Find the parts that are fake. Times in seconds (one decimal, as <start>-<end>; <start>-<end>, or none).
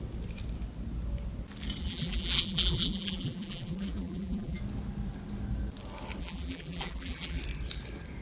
1.8-4.6; 6.2-7.4